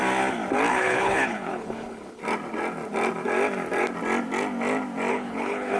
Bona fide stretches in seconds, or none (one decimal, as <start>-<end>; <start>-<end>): 0.0-0.7; 2.2-5.1

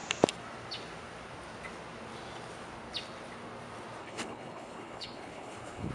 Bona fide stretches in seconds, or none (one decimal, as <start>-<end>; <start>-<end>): 0.0-4.0

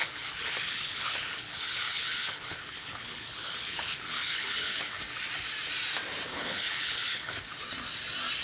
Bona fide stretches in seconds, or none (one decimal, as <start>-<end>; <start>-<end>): 5.0-6.3; 7.6-8.4

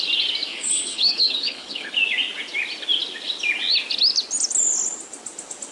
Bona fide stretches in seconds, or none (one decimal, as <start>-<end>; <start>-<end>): 0.0-0.5; 1.9-5.7

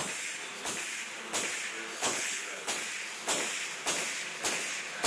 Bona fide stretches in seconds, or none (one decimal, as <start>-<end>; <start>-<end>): 0.0-1.9; 2.7-5.1